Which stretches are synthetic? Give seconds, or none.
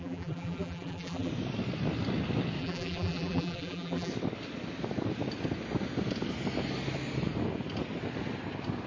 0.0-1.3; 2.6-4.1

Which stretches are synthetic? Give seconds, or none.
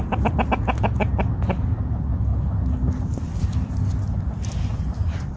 none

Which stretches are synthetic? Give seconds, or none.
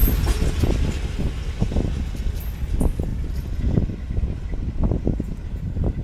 none